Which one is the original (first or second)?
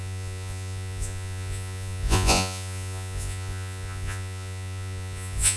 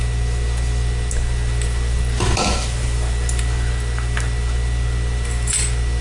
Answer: second